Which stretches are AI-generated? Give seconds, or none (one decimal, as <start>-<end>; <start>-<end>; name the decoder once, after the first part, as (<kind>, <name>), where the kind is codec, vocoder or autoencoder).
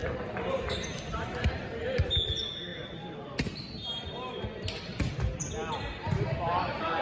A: 0.0-1.5 (vocoder, BigVGAN v2)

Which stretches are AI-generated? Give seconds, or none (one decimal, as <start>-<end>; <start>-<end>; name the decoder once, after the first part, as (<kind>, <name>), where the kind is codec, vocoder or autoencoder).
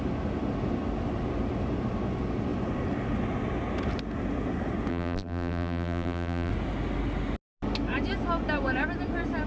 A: 4.9-6.5 (vocoder, BigVGAN v2)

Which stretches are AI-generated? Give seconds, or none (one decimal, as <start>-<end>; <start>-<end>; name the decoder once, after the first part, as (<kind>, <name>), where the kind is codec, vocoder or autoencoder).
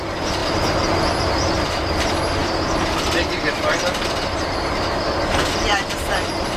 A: none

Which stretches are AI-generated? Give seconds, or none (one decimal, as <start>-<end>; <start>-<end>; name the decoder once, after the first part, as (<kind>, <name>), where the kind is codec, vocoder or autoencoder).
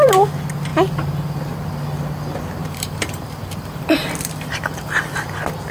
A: 2.6-5.2 (vocoder, BigVGAN v2)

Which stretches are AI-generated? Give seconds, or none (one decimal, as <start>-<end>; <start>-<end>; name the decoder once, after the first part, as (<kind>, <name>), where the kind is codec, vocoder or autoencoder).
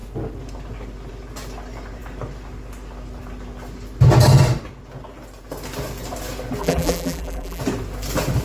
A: 6.6-7.6 (vocoder, BigVGAN v2)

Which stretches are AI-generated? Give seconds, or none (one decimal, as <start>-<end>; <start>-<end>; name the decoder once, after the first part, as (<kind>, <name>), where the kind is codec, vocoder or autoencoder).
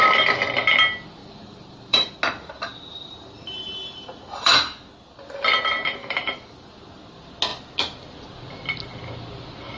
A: 1.2-2.2 (vocoder, BigVGAN v2); 2.9-4.5; 6.0-6.8